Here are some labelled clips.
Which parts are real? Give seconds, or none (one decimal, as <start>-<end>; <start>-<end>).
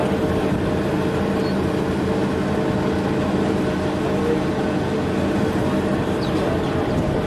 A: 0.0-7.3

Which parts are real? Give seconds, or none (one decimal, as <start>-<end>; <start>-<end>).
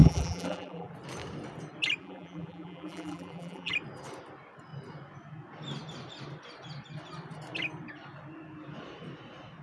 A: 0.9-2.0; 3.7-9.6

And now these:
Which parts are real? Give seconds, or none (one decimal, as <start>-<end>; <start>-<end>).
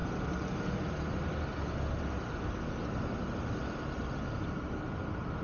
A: 0.0-5.4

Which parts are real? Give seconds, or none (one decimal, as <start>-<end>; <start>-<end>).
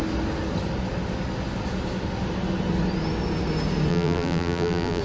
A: 0.0-3.9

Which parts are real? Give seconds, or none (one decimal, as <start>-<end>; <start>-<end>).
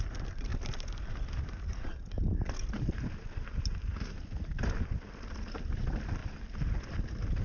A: none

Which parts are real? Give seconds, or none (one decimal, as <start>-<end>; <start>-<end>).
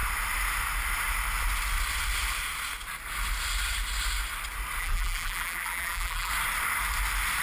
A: 0.0-4.8; 6.3-7.4